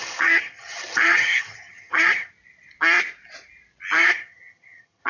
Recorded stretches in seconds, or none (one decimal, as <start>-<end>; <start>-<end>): 2.3-4.0